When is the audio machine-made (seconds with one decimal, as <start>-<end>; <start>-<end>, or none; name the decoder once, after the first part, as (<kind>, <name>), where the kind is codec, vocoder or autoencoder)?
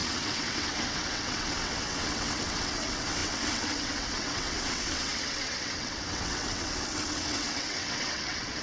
0.0-8.6 (vocoder, WaveNeXt)